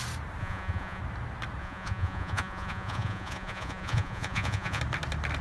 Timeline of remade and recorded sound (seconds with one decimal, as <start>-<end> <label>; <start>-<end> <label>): 0.0-0.4 recorded; 0.4-1.0 remade; 1.0-1.6 recorded; 1.6-4.8 remade; 4.8-5.4 recorded